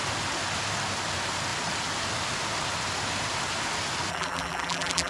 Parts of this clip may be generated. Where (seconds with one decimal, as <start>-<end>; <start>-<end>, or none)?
4.1-5.1